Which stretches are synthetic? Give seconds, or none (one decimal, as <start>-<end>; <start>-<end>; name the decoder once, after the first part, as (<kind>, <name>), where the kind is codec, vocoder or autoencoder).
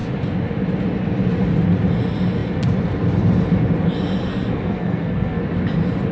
4.3-5.4 (codec, SNAC)